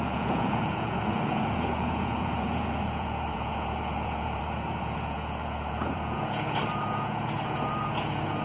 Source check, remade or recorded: remade